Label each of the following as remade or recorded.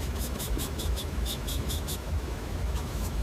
remade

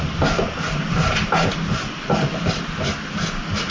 recorded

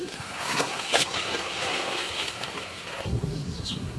remade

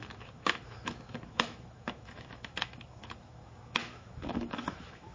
remade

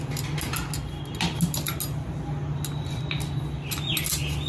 recorded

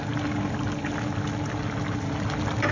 recorded